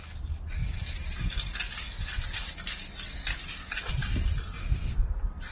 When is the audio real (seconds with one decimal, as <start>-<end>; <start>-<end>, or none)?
0.0-4.6; 5.1-5.5